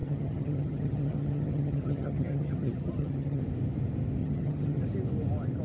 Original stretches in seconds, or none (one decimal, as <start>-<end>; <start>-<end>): 3.4-4.2; 4.8-5.6